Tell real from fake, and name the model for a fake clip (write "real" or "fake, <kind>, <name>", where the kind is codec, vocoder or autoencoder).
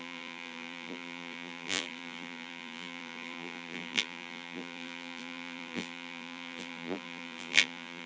fake, vocoder, BigVGAN v2